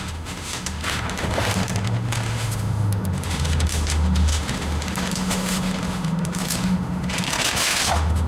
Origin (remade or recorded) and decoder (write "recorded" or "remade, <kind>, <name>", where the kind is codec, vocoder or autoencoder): remade, autoencoder, DAC-VAE